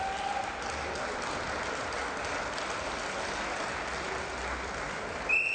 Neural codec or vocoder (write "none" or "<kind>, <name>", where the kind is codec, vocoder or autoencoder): none